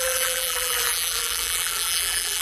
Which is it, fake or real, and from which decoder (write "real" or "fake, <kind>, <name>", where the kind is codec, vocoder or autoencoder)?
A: fake, vocoder, BigVGAN v2